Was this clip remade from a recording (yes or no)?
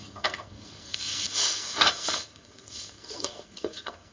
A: yes